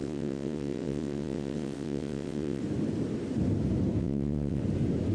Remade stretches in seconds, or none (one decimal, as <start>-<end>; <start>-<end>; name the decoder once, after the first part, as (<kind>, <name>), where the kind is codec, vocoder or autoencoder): 0.0-2.6 (vocoder, WaveNeXt); 4.0-4.6